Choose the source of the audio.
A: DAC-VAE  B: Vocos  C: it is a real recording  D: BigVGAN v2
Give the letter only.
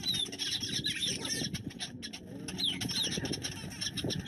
C